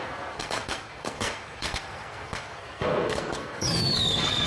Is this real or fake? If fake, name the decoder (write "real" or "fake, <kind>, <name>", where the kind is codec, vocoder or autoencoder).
fake, codec, SNAC